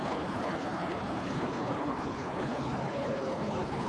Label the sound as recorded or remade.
remade